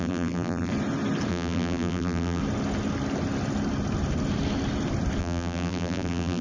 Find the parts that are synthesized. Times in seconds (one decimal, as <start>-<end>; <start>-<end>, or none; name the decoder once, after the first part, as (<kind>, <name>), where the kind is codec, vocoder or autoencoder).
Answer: 0.0-0.7 (vocoder, BigVGAN v2); 1.3-2.4; 5.2-6.4